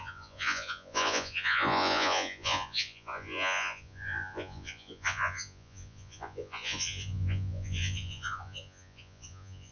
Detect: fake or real fake